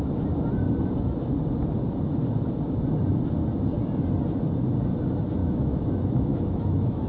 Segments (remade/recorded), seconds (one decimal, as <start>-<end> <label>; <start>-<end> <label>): 0.0-5.4 recorded; 5.4-7.1 remade